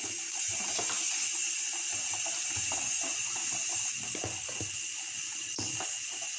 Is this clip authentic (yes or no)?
yes